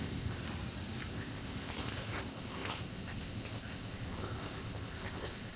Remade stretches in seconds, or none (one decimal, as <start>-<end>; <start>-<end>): 0.0-0.4; 1.1-5.6